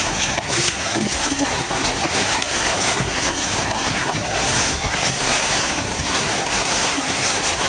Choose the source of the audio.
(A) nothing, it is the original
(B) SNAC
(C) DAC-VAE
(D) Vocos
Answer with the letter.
B